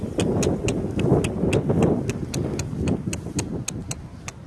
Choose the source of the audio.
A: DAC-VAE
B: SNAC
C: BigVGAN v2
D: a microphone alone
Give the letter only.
D